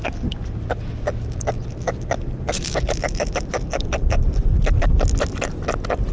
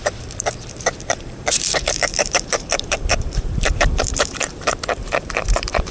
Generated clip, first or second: second